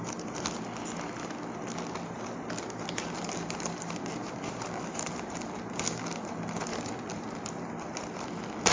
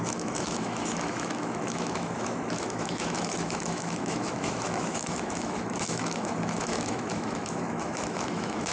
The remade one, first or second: second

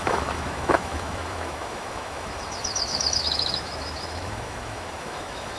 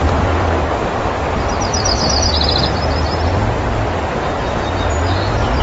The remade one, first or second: first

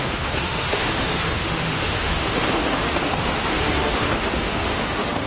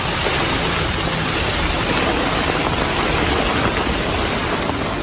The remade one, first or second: first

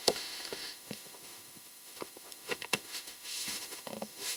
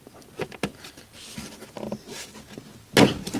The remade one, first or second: first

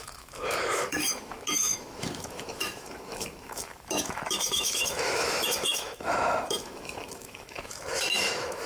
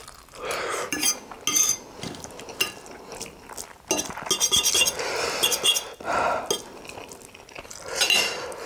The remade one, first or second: first